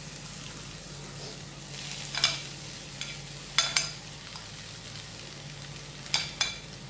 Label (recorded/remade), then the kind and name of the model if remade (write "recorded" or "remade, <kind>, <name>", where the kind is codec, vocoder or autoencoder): recorded